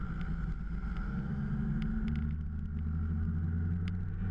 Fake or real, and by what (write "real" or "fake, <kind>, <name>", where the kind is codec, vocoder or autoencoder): real